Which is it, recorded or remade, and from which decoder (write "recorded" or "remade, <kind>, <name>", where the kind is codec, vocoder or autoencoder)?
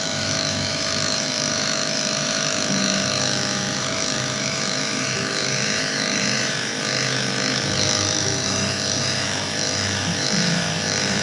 remade, autoencoder, DAC-VAE